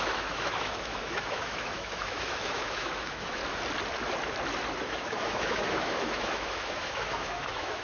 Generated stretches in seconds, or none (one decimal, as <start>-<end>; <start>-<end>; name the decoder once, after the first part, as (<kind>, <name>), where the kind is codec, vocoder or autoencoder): 0.0-3.4 (autoencoder, DAC-VAE); 4.9-7.8